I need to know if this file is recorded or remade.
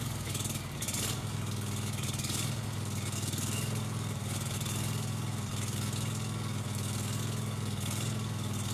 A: remade